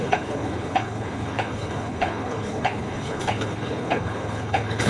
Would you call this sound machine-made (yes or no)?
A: yes